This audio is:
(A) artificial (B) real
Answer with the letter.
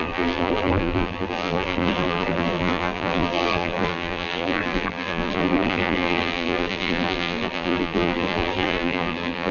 A